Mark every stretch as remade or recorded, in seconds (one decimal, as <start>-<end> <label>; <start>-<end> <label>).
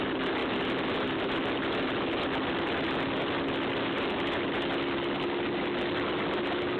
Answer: 0.0-6.8 recorded